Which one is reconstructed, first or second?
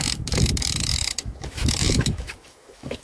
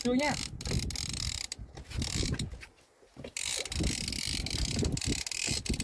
first